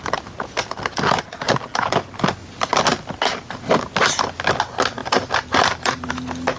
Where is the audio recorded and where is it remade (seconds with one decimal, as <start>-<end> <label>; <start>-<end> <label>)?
0.0-5.0 recorded; 5.0-6.1 remade; 6.1-6.6 recorded